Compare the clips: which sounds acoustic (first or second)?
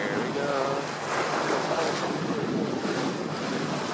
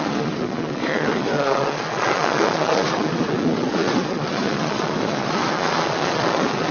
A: first